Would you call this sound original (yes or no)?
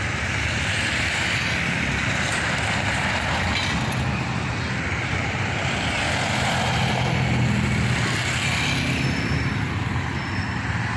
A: yes